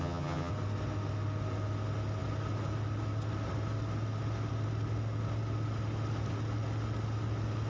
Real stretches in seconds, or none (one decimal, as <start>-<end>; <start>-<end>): 0.5-7.7